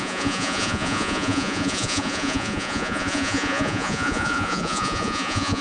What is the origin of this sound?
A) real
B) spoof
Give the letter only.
B